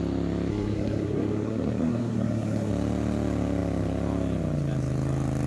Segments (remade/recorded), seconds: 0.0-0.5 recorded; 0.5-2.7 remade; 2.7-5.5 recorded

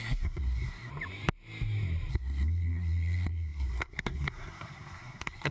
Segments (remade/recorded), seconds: 0.0-0.9 remade; 0.9-2.1 recorded; 2.1-5.5 remade

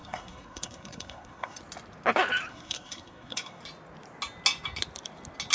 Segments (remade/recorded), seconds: 0.0-1.6 remade; 1.6-2.5 recorded; 2.5-3.6 remade; 3.6-5.5 recorded

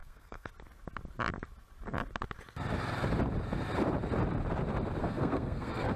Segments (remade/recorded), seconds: 0.0-0.5 remade; 0.5-5.0 recorded; 5.0-6.0 remade

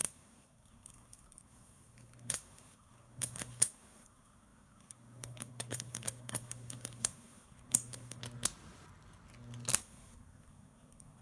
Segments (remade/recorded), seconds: 0.0-8.2 remade; 8.2-9.8 recorded; 9.8-11.2 remade

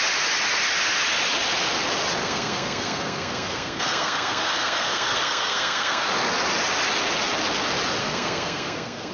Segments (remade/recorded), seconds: 0.0-2.2 recorded; 2.2-6.1 remade; 6.1-8.0 recorded; 8.0-9.1 remade

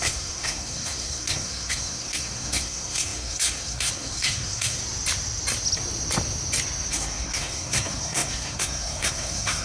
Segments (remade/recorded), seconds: 0.0-4.8 remade; 4.8-6.9 recorded; 6.9-9.6 remade

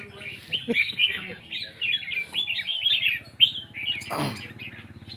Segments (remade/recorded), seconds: 0.0-0.8 recorded; 0.8-1.4 remade; 1.4-5.2 recorded